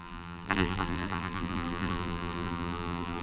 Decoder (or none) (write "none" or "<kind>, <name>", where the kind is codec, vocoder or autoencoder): vocoder, BigVGAN v2